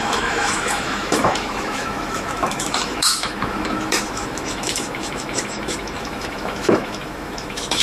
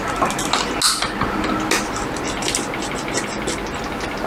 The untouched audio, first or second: second